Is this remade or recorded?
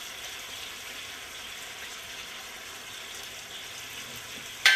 remade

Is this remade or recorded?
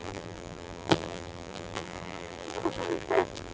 remade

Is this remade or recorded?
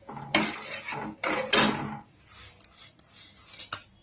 recorded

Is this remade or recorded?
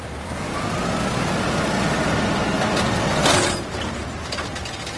recorded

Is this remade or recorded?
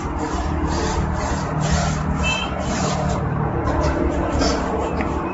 remade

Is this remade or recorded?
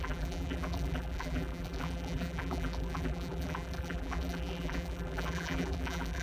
remade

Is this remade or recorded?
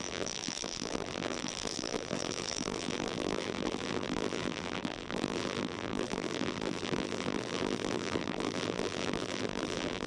remade